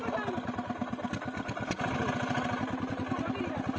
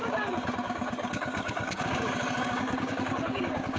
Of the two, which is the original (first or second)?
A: first